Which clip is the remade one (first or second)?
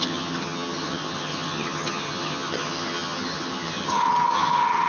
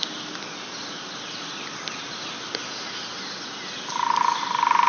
first